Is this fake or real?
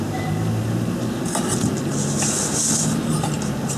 real